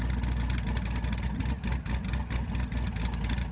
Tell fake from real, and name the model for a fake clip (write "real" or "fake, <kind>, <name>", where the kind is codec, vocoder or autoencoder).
real